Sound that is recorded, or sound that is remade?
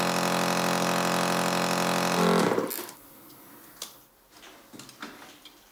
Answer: recorded